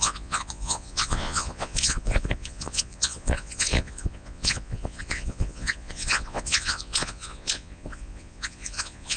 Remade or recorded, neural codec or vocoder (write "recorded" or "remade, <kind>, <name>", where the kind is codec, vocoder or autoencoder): remade, vocoder, Vocos